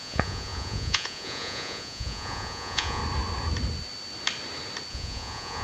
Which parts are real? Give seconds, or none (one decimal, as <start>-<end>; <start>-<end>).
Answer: 3.0-4.9